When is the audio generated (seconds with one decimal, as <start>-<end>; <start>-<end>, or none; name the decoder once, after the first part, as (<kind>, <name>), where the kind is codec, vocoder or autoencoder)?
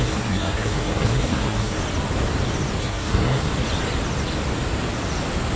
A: 0.0-1.8 (codec, SNAC); 2.8-3.5